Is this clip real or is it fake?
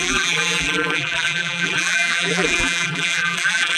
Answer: fake